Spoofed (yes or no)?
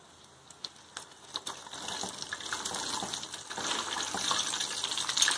no